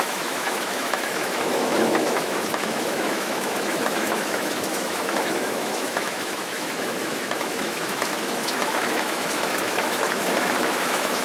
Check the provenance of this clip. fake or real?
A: fake